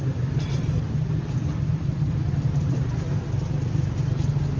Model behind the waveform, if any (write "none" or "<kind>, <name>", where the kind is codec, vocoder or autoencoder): vocoder, BigVGAN v2